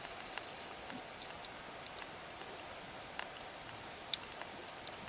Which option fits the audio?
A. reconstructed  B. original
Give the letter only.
B